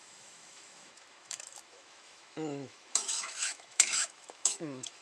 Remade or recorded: remade